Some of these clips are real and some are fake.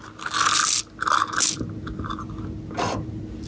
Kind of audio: real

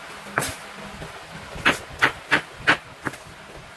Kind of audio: real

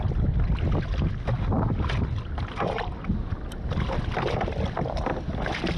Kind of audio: real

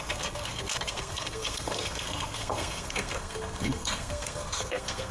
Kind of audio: fake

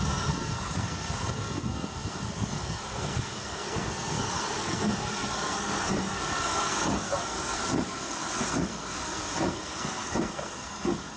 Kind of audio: fake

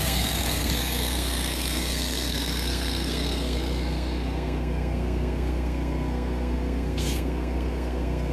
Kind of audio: fake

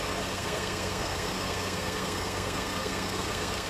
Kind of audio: fake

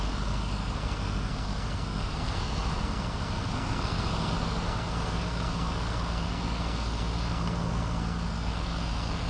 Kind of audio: fake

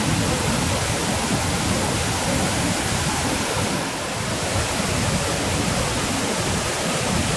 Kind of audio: real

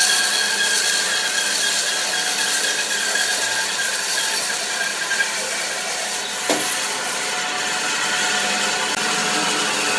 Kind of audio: real